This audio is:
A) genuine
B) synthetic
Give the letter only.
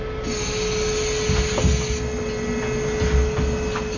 A